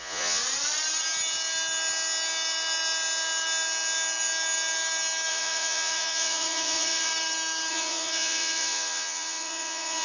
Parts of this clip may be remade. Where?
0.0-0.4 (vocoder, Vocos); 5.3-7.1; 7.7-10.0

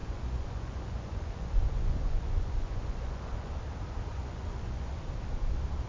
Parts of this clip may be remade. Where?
0.0-3.5 (vocoder, Vocos); 4.1-5.0

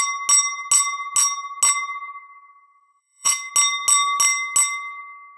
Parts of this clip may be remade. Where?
2.2-3.5 (vocoder, Vocos)

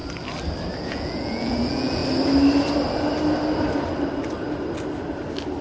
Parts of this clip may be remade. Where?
0.8-2.0 (vocoder, Vocos)

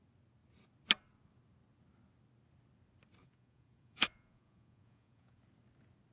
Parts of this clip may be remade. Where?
3.2-5.4 (vocoder, Vocos)

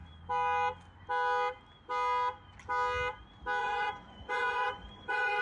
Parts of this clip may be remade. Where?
3.6-5.4 (vocoder, Vocos)

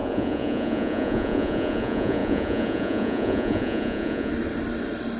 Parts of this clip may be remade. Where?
0.0-4.3 (vocoder, Vocos)

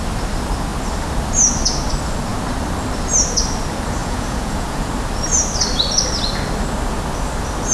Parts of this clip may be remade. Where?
4.0-4.9 (vocoder, Vocos)